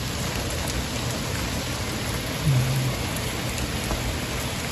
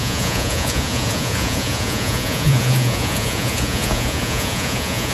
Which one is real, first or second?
first